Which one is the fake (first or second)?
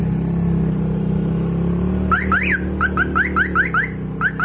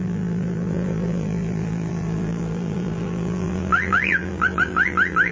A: second